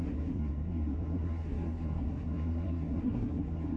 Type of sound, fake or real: fake